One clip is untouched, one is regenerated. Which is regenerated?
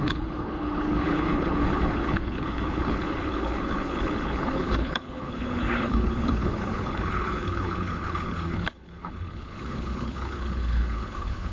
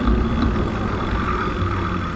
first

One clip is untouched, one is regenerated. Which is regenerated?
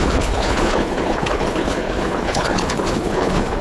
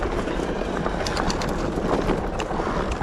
first